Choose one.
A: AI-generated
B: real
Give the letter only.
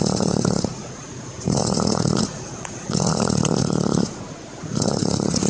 A